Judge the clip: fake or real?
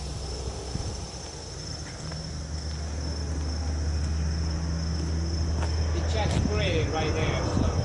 real